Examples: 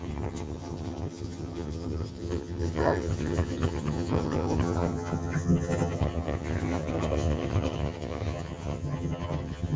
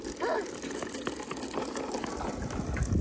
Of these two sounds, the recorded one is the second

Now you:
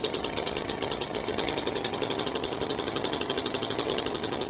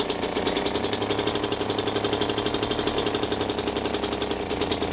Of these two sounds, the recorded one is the second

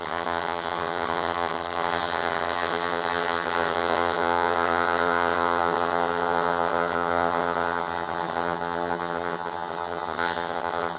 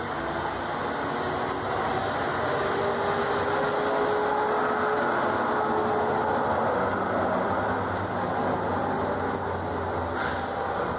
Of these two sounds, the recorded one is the second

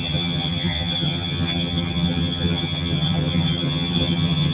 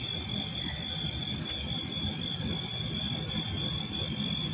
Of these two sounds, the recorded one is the second